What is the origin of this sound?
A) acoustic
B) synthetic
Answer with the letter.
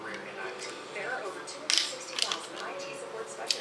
A